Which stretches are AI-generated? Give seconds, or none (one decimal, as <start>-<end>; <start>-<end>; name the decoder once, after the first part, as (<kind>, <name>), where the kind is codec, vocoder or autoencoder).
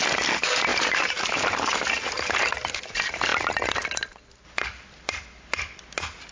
0.7-2.3 (vocoder, BigVGAN v2)